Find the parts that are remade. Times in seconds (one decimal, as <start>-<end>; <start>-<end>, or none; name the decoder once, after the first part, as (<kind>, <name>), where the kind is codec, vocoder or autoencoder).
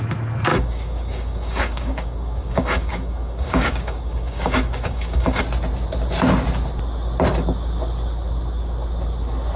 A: 0.5-5.4 (codec, DAC)